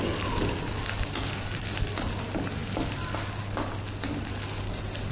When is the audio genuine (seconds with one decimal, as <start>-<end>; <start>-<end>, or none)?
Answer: 0.0-5.1